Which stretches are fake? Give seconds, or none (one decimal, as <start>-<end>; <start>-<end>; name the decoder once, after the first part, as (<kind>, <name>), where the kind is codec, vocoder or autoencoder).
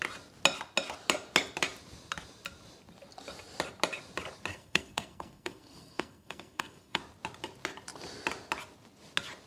4.5-7.0 (codec, SNAC)